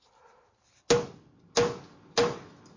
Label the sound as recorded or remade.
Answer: recorded